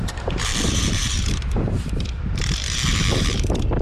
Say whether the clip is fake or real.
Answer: fake